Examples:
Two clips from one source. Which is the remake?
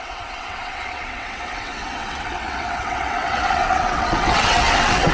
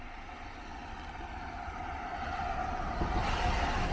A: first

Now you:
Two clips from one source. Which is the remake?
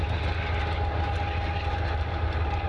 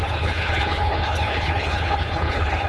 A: second